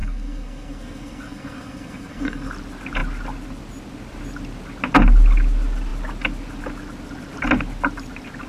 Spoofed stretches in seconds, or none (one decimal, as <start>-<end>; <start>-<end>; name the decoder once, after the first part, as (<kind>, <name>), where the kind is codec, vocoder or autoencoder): 0.0-2.5 (codec, SNAC)